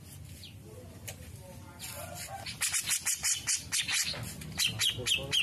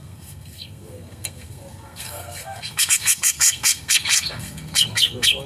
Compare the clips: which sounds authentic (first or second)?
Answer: first